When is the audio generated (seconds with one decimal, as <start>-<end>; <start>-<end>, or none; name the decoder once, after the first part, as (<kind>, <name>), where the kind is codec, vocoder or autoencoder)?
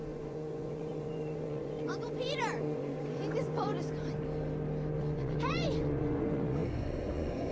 0.0-3.7 (vocoder, Vocos); 5.0-7.5